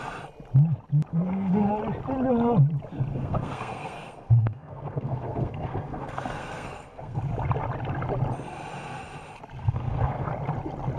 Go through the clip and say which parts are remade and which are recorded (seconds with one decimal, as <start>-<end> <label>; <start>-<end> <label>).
0.0-1.1 recorded; 1.1-1.7 remade; 1.7-3.1 recorded; 3.1-7.2 remade; 7.2-9.6 recorded; 9.6-10.3 remade; 10.3-11.0 recorded